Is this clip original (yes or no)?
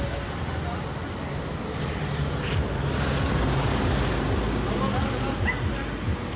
yes